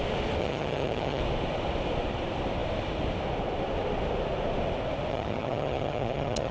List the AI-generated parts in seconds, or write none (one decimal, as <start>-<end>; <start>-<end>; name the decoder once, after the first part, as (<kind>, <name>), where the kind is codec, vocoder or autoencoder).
0.4-1.2 (vocoder, HiFi-GAN); 5.1-6.5